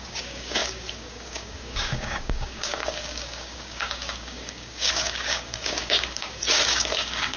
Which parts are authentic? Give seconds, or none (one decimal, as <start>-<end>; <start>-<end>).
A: none